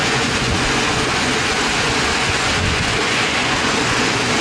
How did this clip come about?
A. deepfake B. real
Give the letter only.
A